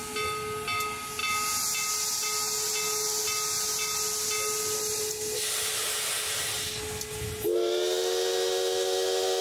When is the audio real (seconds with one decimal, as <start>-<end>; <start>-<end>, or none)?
0.0-9.4

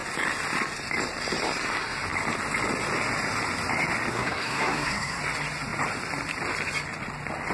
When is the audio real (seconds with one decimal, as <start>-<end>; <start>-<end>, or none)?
0.0-4.1; 5.2-7.5

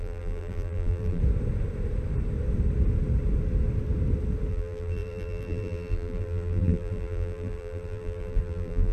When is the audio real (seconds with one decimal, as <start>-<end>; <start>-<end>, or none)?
1.2-4.5

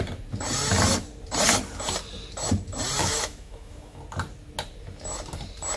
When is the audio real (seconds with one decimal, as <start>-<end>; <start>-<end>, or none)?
0.0-3.0; 4.0-5.8